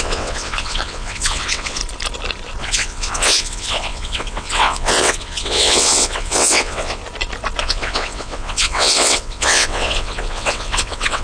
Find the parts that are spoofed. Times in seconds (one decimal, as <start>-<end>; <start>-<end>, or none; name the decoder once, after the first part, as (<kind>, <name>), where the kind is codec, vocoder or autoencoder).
0.0-1.8 (vocoder, WaveNeXt); 2.6-7.0; 7.6-11.2